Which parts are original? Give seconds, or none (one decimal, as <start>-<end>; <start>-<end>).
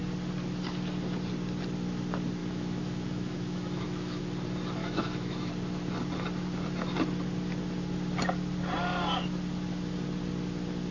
0.0-2.4; 4.2-4.8; 5.5-10.9